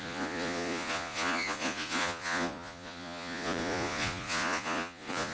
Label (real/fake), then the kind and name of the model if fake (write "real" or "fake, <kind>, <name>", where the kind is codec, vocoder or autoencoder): fake, vocoder, Vocos